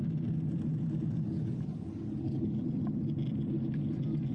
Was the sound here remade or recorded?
recorded